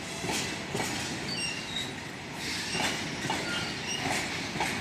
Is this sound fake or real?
real